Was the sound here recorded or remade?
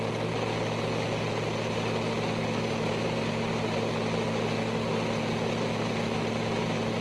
recorded